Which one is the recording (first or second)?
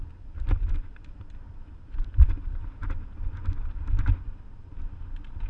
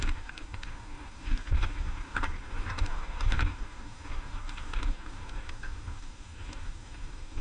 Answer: first